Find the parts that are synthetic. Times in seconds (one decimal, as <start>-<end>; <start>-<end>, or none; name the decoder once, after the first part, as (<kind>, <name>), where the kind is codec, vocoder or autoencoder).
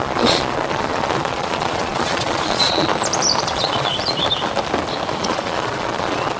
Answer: 0.0-2.9 (vocoder, Vocos); 3.4-3.9; 5.1-6.4